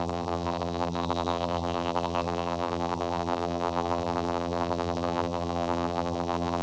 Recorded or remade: remade